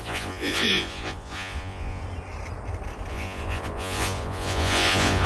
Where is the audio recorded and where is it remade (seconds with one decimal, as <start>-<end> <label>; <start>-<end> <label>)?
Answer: 0.0-2.0 remade; 2.0-3.1 recorded; 3.1-5.3 remade